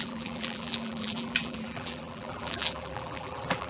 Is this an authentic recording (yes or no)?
no